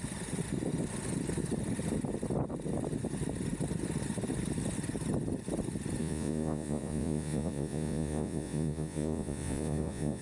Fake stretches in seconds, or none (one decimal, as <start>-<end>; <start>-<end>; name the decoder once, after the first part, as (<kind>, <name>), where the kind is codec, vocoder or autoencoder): 6.0-10.2 (vocoder, Vocos)